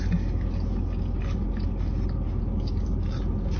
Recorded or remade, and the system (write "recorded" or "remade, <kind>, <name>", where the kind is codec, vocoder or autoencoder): recorded